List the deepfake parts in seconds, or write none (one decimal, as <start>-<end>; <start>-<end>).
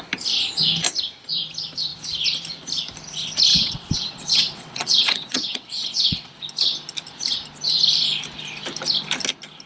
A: 3.5-6.3